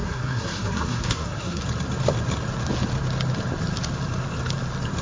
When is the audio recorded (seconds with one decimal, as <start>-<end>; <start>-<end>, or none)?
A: 1.6-5.0